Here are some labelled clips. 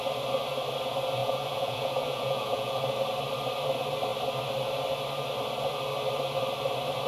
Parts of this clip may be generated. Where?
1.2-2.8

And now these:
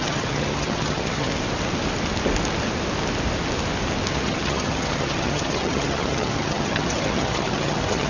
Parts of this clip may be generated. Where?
0.0-1.3; 4.1-8.1